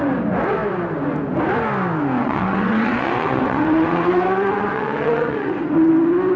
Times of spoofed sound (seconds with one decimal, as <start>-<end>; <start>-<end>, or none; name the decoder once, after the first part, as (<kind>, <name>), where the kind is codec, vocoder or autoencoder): 2.2-5.9 (vocoder, WaveNeXt)